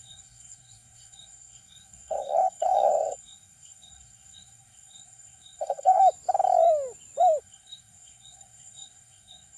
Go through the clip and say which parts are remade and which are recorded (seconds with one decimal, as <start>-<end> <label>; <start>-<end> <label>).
0.0-6.0 remade; 6.0-7.4 recorded; 7.4-9.6 remade